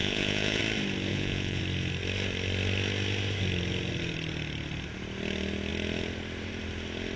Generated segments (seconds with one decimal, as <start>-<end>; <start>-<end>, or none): 0.0-0.6; 1.1-1.6